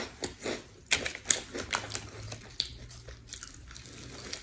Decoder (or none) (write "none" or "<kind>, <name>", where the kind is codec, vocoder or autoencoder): none